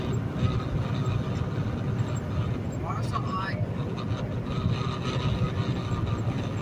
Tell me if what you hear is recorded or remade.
recorded